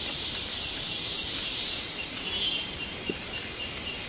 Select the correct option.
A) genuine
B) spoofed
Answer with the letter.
A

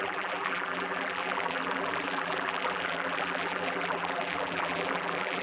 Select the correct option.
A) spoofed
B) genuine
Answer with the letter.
A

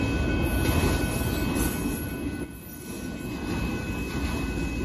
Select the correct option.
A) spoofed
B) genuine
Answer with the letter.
B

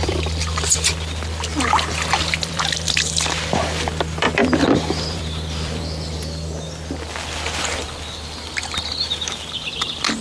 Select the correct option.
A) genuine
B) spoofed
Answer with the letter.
B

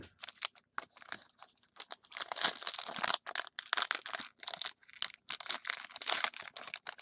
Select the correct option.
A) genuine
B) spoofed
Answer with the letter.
A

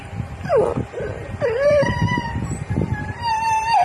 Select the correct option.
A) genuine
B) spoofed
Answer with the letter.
B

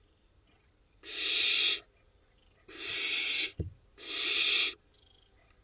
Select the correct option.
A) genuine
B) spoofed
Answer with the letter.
B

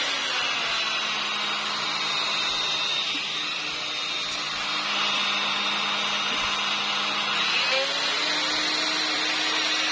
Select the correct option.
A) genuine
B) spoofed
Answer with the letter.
A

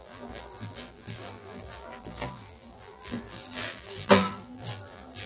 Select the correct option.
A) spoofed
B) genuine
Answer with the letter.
A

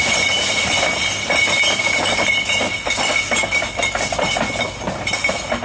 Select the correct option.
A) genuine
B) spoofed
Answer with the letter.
A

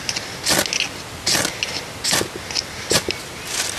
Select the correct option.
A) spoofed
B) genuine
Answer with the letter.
B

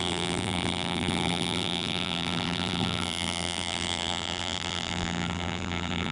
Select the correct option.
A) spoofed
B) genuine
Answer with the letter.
A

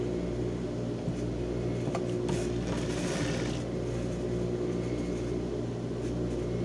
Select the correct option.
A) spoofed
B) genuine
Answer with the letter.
B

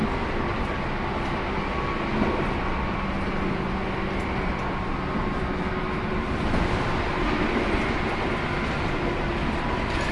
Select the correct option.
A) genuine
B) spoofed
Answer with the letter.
A